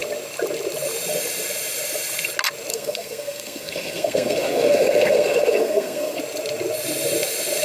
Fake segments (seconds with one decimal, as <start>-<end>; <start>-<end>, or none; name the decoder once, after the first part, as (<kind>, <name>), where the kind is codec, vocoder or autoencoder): 2.7-6.2 (codec, SNAC)